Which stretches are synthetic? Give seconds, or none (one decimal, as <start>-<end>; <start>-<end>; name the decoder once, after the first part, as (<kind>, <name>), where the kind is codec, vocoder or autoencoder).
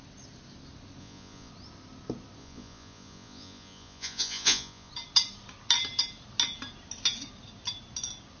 1.0-1.5 (vocoder, Vocos); 2.4-4.9